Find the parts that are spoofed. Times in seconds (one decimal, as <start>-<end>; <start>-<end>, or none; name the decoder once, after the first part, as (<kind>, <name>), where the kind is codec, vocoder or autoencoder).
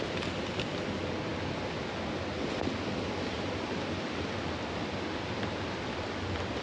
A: none